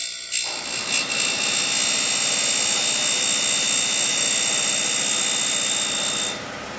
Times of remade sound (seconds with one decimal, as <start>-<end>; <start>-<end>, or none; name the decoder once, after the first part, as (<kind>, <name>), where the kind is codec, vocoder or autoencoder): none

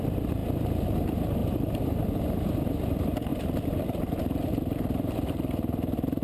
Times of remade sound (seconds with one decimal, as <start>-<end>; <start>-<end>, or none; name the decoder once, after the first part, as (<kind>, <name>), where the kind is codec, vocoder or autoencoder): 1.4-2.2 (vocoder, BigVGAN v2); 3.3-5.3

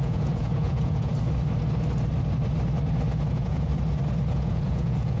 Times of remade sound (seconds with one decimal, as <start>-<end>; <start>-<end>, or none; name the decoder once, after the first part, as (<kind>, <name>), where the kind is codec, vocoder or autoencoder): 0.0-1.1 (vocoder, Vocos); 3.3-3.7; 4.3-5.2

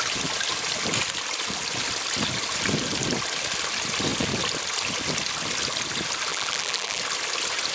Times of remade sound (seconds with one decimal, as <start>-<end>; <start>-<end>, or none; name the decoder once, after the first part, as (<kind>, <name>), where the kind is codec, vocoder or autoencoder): 6.3-7.0 (vocoder, BigVGAN v2)

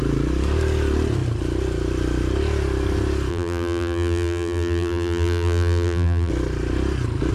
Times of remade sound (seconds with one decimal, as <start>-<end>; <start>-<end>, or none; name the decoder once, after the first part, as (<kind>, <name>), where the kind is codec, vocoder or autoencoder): 3.3-6.3 (vocoder, BigVGAN v2)

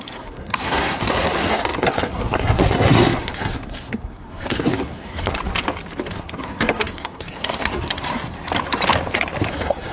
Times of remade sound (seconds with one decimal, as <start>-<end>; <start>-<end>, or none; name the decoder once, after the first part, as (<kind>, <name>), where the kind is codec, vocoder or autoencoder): 0.0-5.4 (codec, SNAC); 6.1-7.8; 9.5-9.9

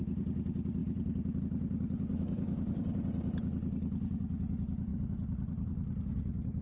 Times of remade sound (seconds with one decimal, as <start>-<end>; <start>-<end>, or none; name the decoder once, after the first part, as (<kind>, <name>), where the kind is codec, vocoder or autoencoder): 2.1-2.8 (autoencoder, DAC-VAE)

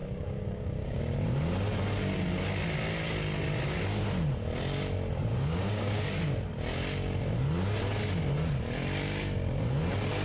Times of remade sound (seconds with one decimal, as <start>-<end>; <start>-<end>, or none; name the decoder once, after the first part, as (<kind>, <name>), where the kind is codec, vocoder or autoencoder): 0.0-1.0 (codec, DAC); 5.3-6.0